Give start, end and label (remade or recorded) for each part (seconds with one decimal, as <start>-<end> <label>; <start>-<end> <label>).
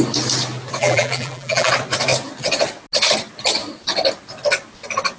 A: 0.0-0.8 recorded; 0.8-1.7 remade; 1.7-5.2 recorded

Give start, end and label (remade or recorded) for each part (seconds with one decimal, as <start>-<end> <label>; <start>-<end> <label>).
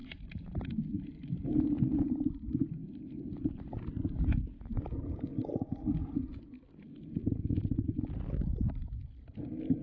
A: 0.0-1.6 remade; 1.6-9.8 recorded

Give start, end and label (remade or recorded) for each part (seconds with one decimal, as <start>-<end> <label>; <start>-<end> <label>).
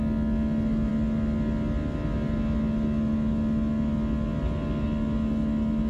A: 0.0-5.9 recorded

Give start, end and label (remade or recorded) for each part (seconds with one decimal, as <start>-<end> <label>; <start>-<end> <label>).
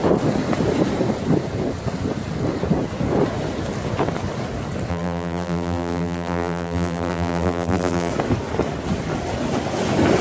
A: 0.0-4.9 recorded; 4.9-8.1 remade; 8.1-10.2 recorded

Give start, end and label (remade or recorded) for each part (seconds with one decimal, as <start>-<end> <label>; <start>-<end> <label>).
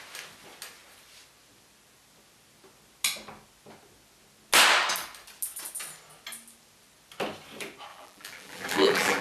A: 0.0-7.9 recorded; 7.9-9.2 remade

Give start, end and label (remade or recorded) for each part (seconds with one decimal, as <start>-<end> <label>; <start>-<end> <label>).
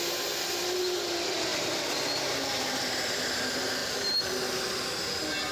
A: 0.0-1.5 recorded; 1.5-2.6 remade; 2.6-3.8 recorded; 3.8-4.3 remade; 4.3-5.5 recorded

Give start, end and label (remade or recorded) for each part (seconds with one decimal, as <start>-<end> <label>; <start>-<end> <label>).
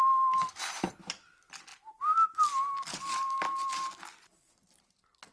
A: 0.0-5.3 recorded